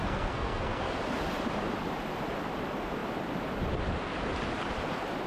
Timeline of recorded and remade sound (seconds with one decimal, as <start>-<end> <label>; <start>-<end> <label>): 0.0-1.0 remade; 1.0-5.3 recorded